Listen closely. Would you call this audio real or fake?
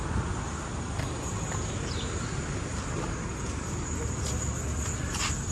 real